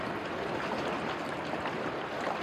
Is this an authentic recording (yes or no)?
yes